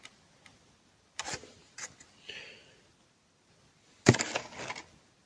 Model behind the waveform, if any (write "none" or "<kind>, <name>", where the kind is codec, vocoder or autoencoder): none